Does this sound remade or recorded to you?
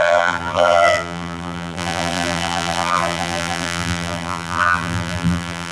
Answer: remade